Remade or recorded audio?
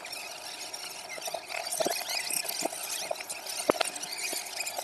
recorded